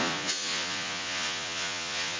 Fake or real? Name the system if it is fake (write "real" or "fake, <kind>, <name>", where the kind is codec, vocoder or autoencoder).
fake, vocoder, Vocos